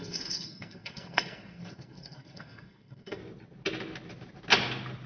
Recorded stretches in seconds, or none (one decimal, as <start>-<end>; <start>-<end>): 3.2-5.1